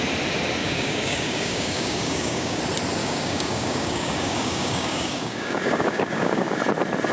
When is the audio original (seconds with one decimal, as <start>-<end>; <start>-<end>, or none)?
0.0-0.6; 2.6-3.0; 6.6-7.1